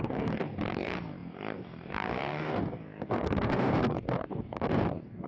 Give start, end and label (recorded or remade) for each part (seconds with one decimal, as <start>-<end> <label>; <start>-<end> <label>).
0.0-5.3 remade